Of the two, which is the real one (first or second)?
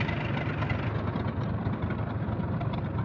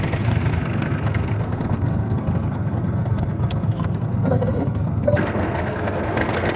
first